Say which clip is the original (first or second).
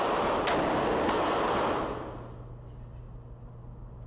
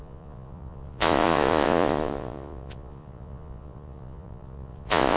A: first